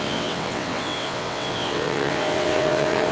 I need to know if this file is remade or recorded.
remade